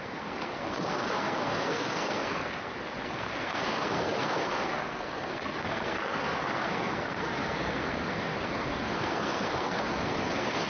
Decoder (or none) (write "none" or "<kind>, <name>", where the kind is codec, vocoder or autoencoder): codec, SNAC